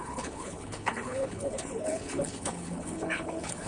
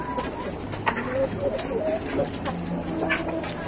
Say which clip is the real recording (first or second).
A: second